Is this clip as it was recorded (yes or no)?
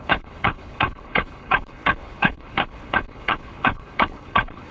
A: no